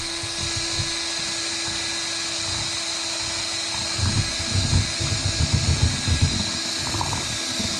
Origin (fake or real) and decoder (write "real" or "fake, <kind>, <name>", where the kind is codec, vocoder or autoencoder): real